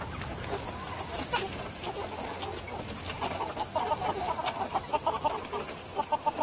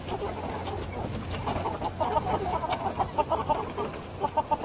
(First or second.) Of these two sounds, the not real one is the first